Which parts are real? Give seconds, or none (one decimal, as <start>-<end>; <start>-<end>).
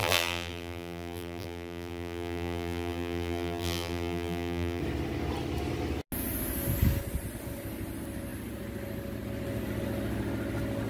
4.8-10.9